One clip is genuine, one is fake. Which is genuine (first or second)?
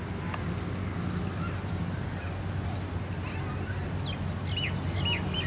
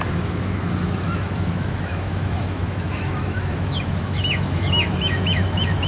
first